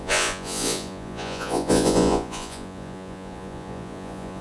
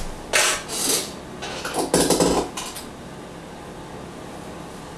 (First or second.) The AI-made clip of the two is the first